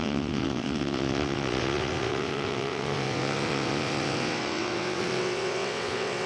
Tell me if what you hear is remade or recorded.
remade